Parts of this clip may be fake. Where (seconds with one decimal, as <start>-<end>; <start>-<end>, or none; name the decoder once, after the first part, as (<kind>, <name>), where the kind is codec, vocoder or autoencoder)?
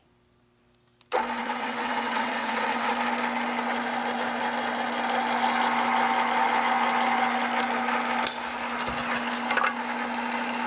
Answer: 1.4-2.9 (vocoder, WaveNeXt)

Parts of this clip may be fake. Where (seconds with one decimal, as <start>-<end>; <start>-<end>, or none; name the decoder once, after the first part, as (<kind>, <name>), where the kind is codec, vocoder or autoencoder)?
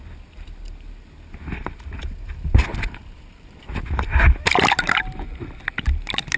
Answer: none